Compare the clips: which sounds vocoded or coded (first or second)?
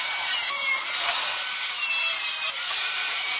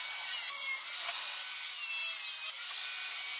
first